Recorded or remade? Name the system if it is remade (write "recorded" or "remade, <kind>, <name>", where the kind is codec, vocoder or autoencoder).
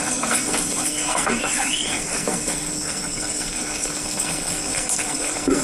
remade, codec, SNAC